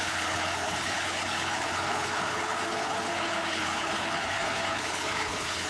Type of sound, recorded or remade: remade